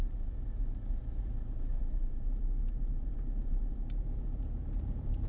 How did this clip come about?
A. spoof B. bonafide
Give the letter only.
A